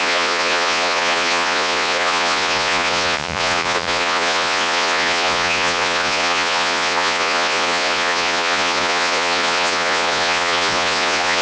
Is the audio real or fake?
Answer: fake